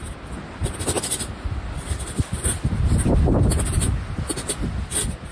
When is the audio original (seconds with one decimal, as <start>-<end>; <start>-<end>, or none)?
0.0-5.3